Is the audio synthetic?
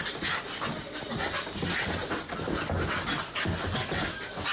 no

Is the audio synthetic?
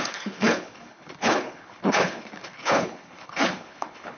yes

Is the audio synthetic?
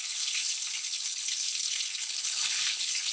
yes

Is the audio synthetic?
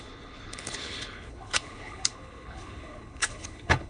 yes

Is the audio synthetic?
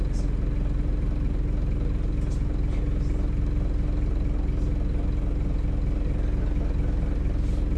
no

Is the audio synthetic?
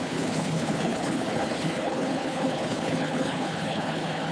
yes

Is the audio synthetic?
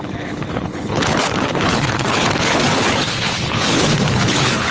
yes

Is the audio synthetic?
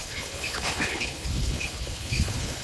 yes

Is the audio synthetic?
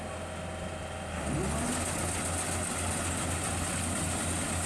no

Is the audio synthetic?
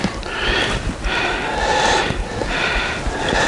no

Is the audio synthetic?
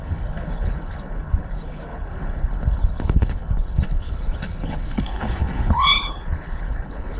yes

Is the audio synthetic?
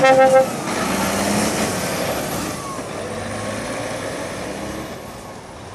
no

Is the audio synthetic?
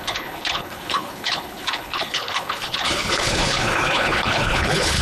yes